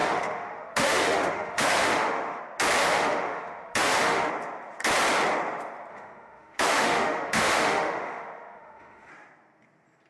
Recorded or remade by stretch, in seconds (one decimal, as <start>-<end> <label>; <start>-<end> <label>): 0.0-2.4 remade; 2.4-2.8 recorded; 2.8-4.3 remade; 4.3-5.9 recorded; 5.9-9.1 remade; 9.1-10.1 recorded